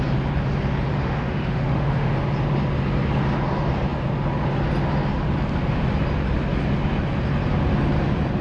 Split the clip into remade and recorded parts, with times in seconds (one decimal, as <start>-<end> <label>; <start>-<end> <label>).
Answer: 0.0-1.0 recorded; 1.0-2.1 remade; 2.1-8.4 recorded